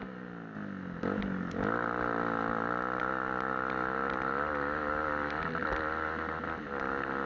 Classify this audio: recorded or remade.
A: recorded